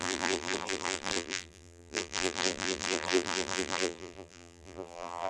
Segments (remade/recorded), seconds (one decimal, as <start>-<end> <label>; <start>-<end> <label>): 0.0-5.3 remade